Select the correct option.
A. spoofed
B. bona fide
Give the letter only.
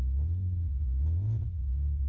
B